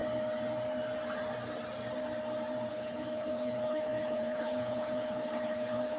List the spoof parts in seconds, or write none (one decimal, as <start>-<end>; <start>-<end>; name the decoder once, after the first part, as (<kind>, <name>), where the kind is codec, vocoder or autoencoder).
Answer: 2.7-6.0 (codec, HILCodec)